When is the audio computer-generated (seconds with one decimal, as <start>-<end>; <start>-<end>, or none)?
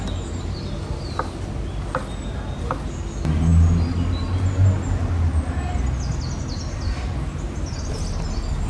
none